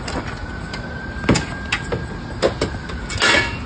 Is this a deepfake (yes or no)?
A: no